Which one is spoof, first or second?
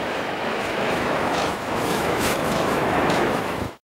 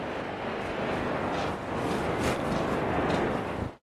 first